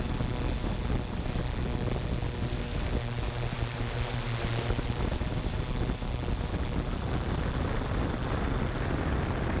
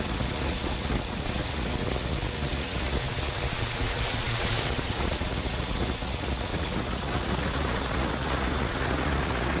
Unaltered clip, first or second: first